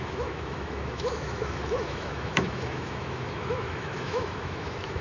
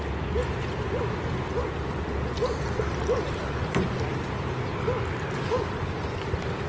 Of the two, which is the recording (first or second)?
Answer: second